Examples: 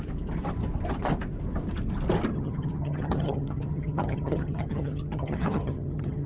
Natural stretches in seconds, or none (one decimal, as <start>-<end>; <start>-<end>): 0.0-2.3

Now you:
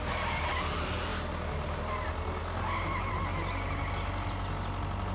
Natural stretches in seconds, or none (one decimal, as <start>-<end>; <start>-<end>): 0.0-5.1

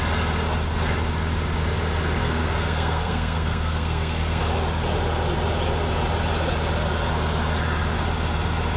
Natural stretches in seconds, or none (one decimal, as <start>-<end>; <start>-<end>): 0.0-2.2; 4.4-8.8

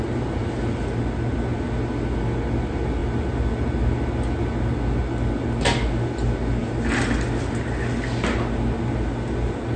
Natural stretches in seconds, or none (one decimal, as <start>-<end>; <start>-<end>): 0.0-9.8

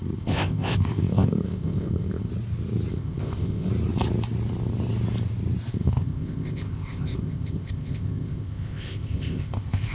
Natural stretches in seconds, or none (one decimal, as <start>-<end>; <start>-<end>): 2.3-2.9; 3.7-5.7

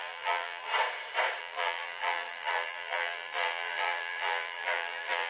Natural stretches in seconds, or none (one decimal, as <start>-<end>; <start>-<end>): 0.7-1.4